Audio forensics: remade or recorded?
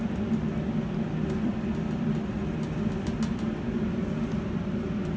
recorded